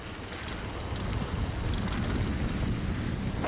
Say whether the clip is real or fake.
real